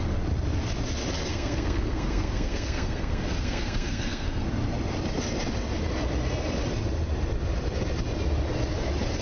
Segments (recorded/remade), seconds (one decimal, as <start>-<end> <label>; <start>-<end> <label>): 0.0-1.3 recorded; 1.3-4.5 remade; 4.5-9.2 recorded